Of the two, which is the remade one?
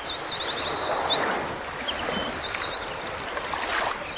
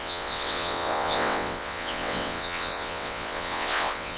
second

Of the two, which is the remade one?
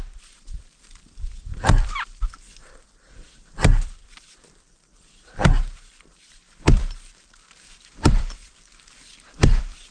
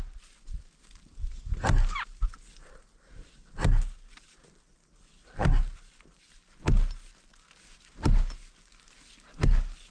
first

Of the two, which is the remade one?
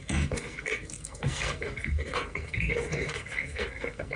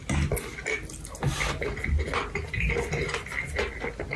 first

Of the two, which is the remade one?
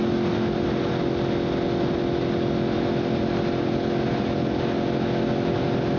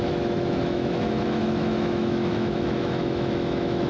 second